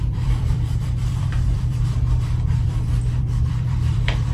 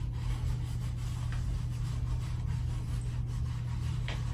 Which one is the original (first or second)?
second